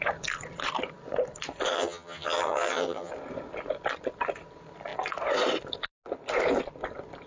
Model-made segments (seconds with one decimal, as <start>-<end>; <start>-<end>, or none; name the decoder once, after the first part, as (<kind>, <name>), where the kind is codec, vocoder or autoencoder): 1.7-3.1 (vocoder, HiFi-GAN)

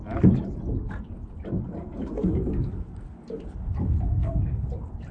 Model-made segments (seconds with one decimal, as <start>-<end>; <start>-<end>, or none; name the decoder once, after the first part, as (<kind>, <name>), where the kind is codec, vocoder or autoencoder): 1.7-2.7 (codec, SNAC); 4.1-4.6

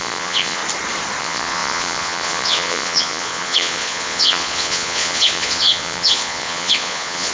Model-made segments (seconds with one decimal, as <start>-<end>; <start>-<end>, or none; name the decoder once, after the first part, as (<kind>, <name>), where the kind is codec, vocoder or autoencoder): 0.0-0.6 (vocoder, Vocos); 1.2-7.3

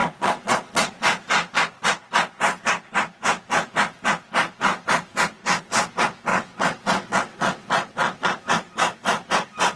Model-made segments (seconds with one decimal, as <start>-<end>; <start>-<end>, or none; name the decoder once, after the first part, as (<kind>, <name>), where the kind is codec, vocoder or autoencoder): 0.0-0.9 (vocoder, WaveNeXt); 6.3-8.4

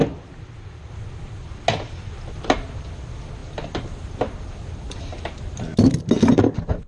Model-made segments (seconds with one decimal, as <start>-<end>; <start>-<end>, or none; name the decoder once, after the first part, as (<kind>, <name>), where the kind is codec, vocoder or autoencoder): none

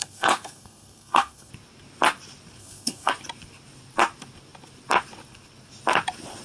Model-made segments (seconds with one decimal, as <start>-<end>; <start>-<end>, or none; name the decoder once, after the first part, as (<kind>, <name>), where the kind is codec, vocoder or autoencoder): 0.0-1.5 (codec, SNAC); 2.6-3.1